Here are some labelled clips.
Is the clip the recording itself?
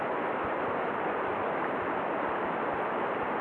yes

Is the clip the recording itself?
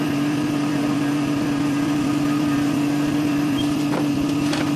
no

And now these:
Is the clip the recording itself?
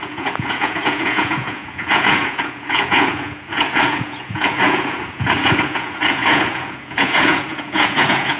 no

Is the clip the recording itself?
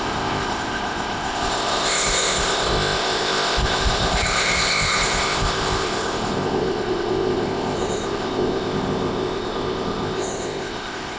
no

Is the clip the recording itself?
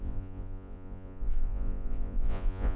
no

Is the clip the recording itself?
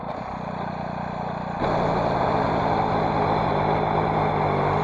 yes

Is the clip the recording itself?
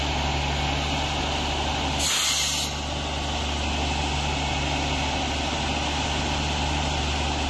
yes